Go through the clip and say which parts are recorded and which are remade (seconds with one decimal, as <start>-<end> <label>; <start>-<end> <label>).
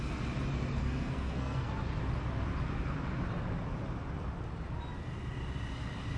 0.0-0.8 recorded; 0.8-1.7 remade; 1.7-6.2 recorded